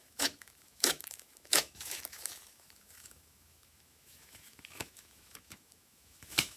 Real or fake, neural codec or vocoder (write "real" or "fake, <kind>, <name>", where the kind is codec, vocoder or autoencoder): fake, autoencoder, DAC-VAE